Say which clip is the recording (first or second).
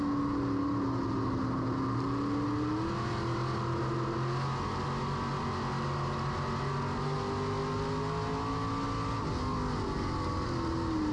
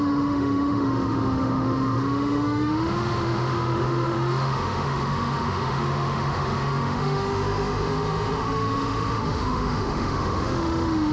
first